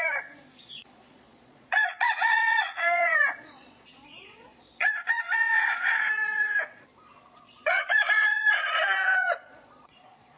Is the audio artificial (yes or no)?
yes